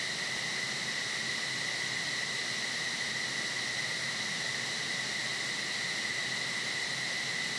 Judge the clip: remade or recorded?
recorded